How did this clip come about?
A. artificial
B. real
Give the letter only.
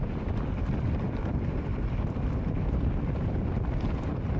A